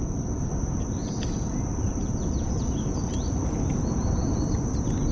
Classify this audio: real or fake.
real